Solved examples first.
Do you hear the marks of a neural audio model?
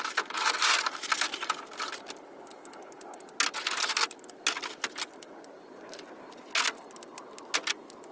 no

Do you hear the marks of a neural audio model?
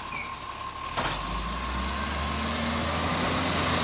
no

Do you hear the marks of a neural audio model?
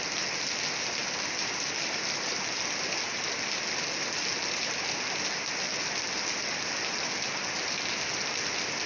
no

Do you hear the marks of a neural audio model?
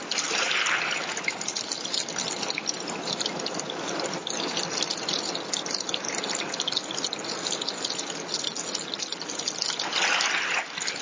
no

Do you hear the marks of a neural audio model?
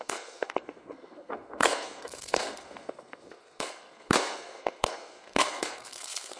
yes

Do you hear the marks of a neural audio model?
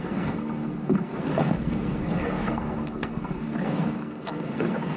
yes